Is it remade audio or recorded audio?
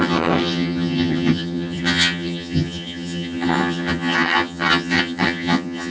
remade